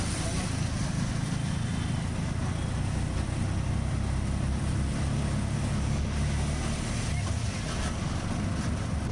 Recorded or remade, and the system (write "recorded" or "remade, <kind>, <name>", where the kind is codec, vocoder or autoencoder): recorded